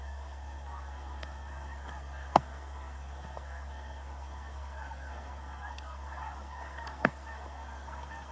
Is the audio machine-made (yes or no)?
yes